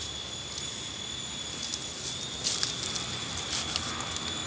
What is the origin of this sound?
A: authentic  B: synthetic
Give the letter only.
A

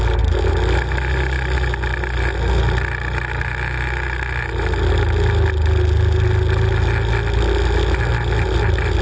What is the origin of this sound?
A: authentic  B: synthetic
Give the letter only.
A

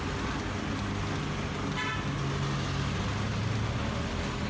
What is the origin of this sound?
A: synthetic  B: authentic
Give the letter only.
B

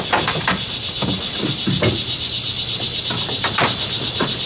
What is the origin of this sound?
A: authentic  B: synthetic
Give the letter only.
A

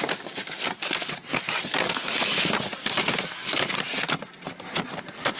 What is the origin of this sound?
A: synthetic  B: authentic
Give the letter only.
B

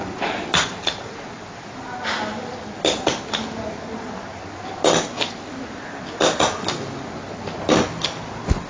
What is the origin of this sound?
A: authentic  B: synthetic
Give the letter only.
A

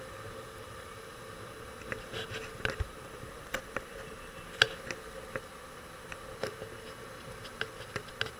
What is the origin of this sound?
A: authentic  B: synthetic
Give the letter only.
A